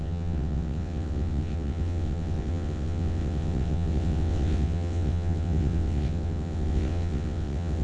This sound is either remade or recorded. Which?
remade